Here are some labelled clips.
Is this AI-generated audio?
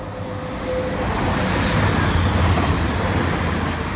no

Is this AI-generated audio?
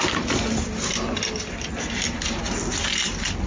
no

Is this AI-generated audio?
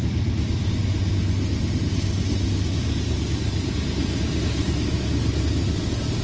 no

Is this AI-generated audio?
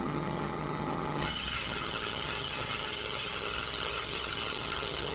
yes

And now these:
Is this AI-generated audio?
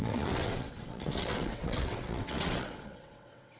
yes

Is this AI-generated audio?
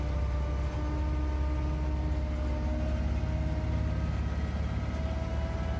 no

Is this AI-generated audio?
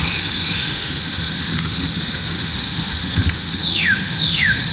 yes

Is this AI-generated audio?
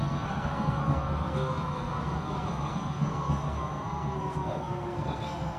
yes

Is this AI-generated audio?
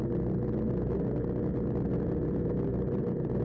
no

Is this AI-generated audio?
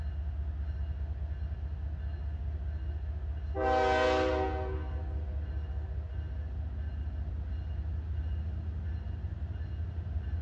no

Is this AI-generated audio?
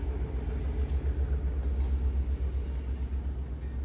no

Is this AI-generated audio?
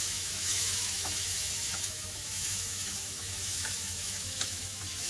yes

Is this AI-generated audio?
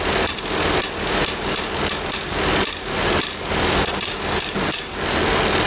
no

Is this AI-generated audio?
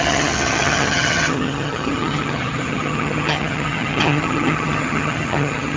yes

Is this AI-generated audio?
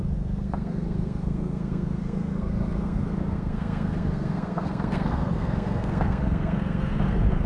yes